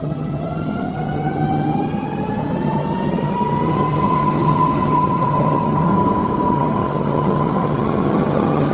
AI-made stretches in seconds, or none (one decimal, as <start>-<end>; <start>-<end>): 0.0-5.9; 6.5-8.7